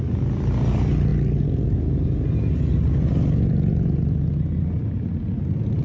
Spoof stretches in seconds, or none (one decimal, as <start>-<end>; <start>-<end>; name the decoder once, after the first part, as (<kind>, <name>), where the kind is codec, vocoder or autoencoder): none